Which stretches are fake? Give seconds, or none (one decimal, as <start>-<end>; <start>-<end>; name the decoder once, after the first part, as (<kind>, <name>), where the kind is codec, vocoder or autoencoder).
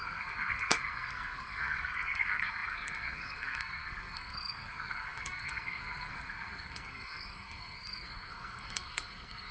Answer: 0.0-9.5 (codec, SNAC)